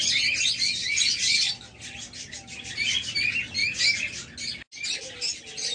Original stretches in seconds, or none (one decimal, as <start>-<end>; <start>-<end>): 0.0-0.8; 1.5-5.7